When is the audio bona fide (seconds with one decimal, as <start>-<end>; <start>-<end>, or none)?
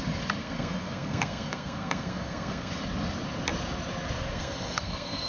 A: 0.0-0.4; 2.7-4.3